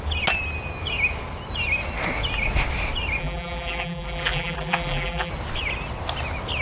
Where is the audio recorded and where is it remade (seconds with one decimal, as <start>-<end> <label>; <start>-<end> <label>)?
0.0-3.2 recorded; 3.2-5.3 remade; 5.3-6.6 recorded